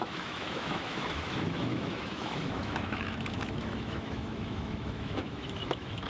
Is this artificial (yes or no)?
yes